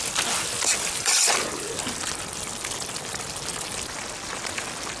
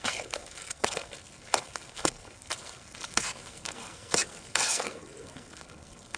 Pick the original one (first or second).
first